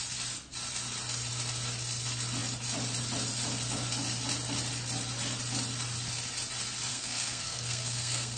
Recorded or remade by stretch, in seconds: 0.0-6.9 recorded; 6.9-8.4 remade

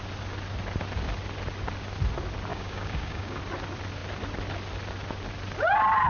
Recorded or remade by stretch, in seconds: 0.0-2.5 recorded; 2.5-3.4 remade; 3.4-6.1 recorded

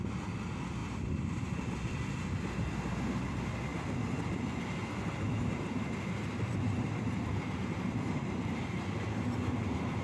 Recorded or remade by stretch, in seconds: 0.0-10.0 recorded

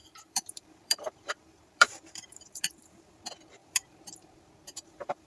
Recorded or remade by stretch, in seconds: 0.0-3.1 remade; 3.1-3.6 recorded; 3.6-5.3 remade

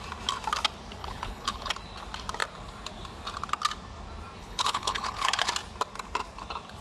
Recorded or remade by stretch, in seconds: 0.0-1.0 recorded; 1.0-1.7 remade; 1.7-4.4 recorded; 4.4-5.5 remade; 5.5-6.8 recorded

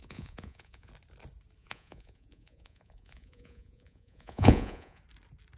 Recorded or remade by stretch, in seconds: 0.0-0.9 remade; 0.9-1.6 recorded; 1.6-5.0 remade; 5.0-5.6 recorded

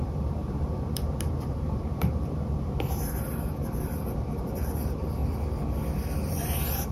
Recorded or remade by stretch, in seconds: 0.0-5.2 remade; 5.2-6.3 recorded; 6.3-6.9 remade